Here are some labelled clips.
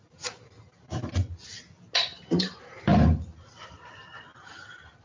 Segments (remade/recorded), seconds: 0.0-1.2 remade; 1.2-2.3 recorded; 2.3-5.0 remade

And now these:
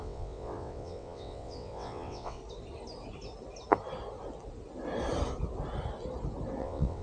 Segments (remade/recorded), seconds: 0.0-2.4 remade; 2.4-6.6 recorded; 6.6-7.0 remade

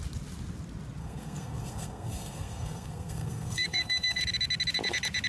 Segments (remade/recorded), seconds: 0.0-1.0 recorded; 1.0-4.2 remade; 4.2-5.3 recorded

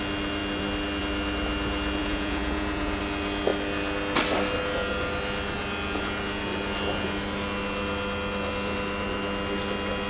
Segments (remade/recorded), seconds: 0.0-2.0 recorded; 2.0-3.0 remade; 3.0-10.1 recorded

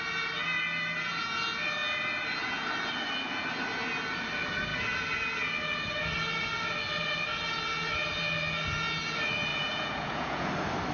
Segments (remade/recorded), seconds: 0.0-9.5 recorded; 9.5-10.5 remade; 10.5-10.9 recorded

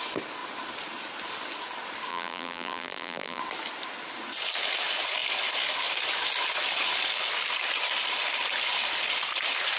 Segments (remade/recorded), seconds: 0.0-2.1 recorded; 2.1-3.4 remade; 3.4-9.8 recorded

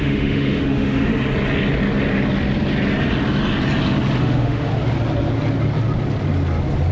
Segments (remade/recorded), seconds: 0.0-1.1 remade; 1.1-4.2 recorded; 4.2-4.7 remade; 4.7-6.9 recorded